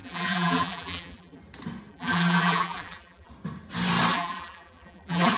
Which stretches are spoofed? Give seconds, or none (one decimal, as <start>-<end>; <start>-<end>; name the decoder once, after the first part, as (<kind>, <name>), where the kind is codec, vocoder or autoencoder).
0.0-1.4 (vocoder, BigVGAN v2); 1.9-3.3; 4.1-5.4